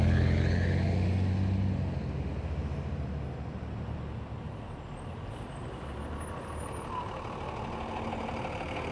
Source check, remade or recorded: recorded